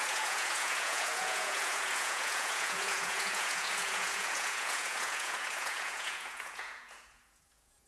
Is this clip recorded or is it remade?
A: remade